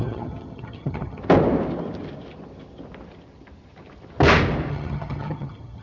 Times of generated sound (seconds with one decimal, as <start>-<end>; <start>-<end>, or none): 0.0-1.2; 4.7-5.8